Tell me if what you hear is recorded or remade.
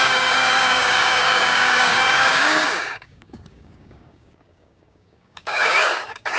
remade